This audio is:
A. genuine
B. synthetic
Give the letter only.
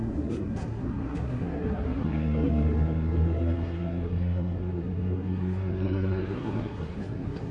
B